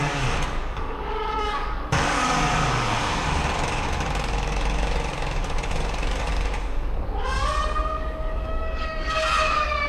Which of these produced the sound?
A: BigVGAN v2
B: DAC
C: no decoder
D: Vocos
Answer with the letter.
B